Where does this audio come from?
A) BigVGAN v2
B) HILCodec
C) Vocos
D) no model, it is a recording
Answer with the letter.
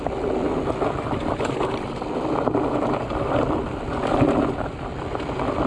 D